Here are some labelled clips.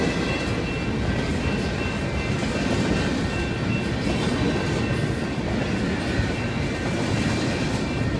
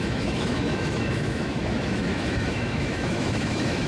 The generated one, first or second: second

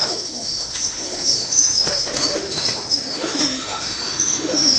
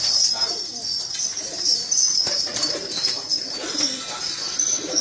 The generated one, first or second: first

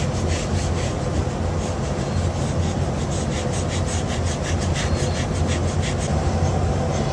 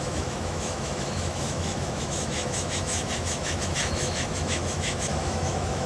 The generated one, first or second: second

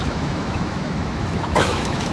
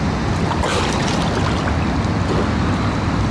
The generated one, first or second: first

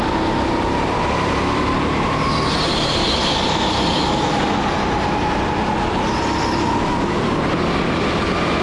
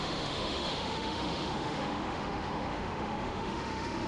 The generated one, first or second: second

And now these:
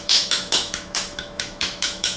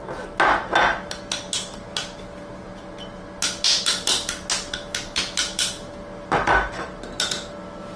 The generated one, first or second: first